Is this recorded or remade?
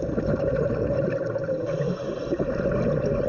recorded